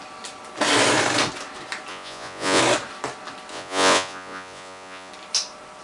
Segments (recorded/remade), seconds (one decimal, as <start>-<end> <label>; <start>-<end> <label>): 0.0-1.9 recorded; 1.9-2.6 remade; 2.6-3.5 recorded; 3.5-5.1 remade; 5.1-5.8 recorded